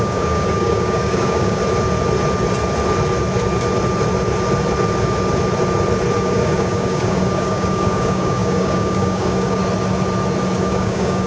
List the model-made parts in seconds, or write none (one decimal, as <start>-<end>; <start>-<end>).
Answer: 0.0-1.6; 6.2-9.6; 10.6-11.3